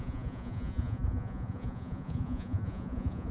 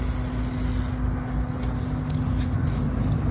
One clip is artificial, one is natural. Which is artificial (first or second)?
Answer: first